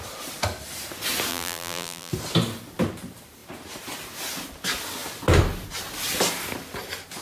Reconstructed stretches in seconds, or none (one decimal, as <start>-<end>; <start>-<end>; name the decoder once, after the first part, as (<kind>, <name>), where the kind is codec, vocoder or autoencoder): 1.3-2.1 (vocoder, BigVGAN v2)